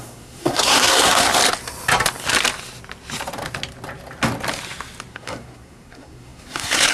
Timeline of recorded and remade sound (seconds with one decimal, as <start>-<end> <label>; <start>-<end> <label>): 0.0-1.3 remade; 1.3-5.1 recorded; 5.1-6.9 remade